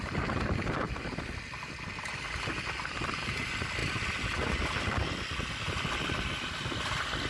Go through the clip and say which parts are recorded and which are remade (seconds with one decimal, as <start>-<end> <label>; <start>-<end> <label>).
0.0-7.3 recorded